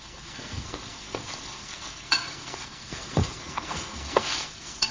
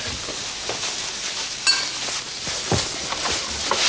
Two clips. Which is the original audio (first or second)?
second